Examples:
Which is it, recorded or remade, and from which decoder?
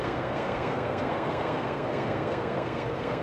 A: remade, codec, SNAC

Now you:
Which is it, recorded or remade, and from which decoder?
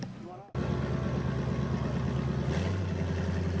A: recorded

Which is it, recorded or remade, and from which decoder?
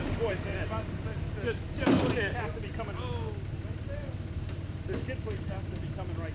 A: recorded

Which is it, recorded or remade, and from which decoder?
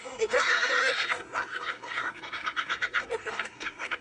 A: remade, codec, SNAC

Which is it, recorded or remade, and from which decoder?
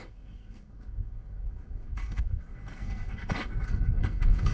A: remade, codec, SNAC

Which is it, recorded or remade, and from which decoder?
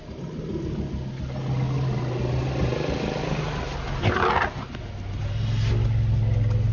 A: recorded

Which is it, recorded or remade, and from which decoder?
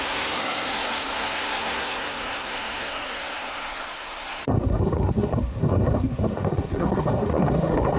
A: remade, codec, SNAC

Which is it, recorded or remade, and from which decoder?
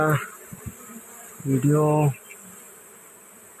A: recorded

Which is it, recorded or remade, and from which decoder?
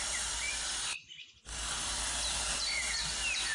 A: recorded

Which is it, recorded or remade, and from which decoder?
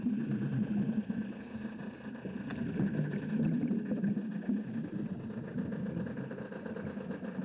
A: recorded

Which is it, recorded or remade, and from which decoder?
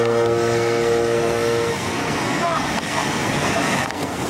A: remade, codec, SNAC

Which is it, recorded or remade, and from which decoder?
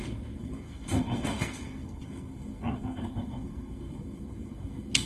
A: remade, codec, SNAC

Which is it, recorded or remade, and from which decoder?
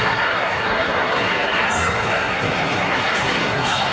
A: remade, codec, SNAC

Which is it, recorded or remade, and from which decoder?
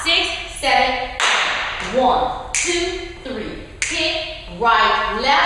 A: recorded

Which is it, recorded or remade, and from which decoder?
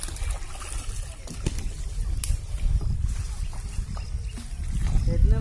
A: recorded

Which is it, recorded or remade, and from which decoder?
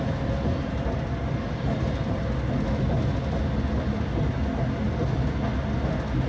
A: recorded